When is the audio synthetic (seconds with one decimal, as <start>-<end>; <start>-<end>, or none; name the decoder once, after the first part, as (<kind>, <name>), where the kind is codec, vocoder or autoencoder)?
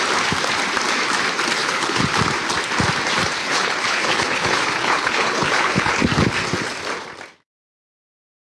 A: 1.6-2.1 (codec, HILCodec); 3.4-6.0